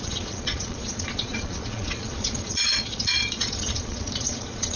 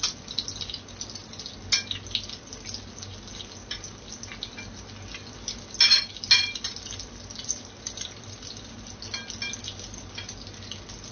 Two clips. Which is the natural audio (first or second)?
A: second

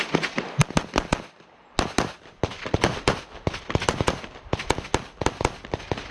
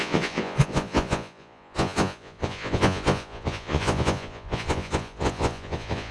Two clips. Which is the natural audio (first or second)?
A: first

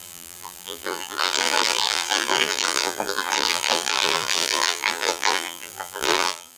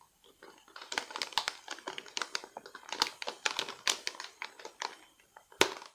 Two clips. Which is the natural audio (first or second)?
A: second